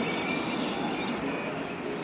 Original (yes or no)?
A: yes